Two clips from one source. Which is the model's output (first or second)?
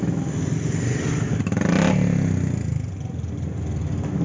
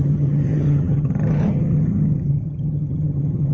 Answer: second